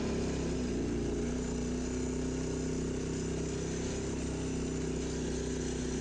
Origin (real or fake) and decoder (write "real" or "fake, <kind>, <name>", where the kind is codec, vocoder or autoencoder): real